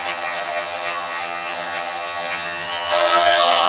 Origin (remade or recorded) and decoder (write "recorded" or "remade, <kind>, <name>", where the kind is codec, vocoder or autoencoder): remade, vocoder, HiFi-GAN